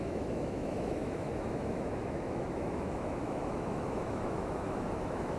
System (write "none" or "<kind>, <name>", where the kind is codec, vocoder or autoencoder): autoencoder, DAC-VAE